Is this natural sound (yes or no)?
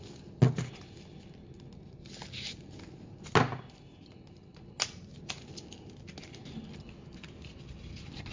yes